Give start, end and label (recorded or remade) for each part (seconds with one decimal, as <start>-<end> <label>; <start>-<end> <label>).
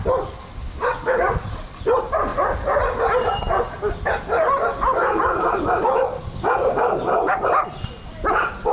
0.0-8.7 recorded